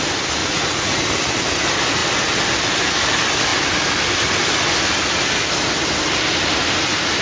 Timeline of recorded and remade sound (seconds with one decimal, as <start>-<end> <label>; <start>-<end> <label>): 0.0-0.4 recorded; 0.4-1.0 remade; 1.0-7.2 recorded